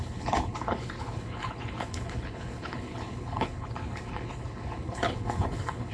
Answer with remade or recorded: remade